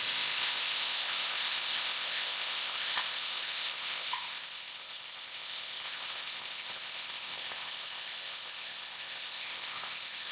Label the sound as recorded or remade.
remade